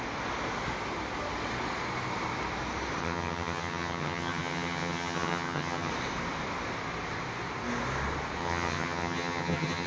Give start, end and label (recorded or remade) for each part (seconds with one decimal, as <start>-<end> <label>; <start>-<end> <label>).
0.0-3.0 recorded; 3.0-5.9 remade; 5.9-8.4 recorded; 8.4-9.9 remade